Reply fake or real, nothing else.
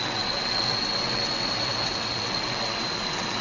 fake